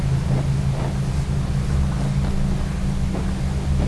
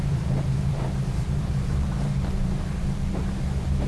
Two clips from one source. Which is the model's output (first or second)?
second